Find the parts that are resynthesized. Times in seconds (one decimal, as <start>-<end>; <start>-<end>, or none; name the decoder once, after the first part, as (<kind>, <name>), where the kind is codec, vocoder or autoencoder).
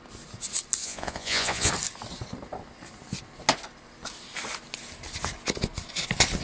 0.8-1.7 (vocoder, Vocos)